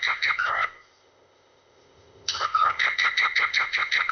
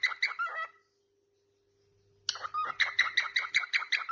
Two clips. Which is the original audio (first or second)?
second